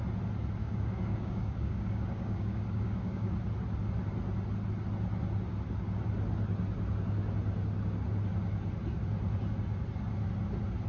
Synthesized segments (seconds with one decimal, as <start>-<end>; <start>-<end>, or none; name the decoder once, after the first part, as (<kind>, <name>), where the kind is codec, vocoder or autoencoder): 0.6-3.3 (codec, DAC)